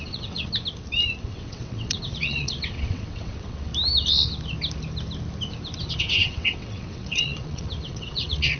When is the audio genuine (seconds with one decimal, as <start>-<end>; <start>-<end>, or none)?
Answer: 0.5-1.2; 3.7-6.0